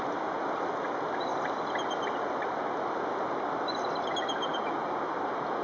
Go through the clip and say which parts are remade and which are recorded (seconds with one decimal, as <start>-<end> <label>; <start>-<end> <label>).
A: 0.0-5.6 recorded